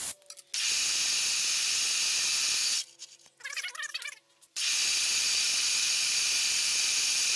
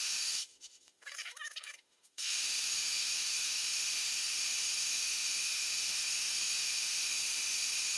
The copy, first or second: second